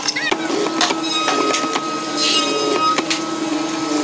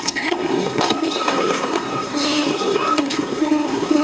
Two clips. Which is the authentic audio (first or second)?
first